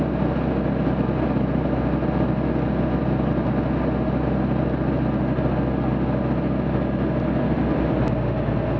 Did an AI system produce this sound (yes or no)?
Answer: no